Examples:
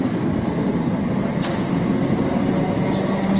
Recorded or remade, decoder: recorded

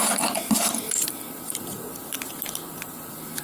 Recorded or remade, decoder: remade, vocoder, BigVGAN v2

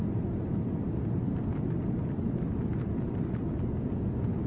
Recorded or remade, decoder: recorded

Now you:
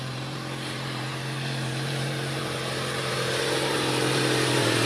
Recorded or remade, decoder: remade, vocoder, BigVGAN v2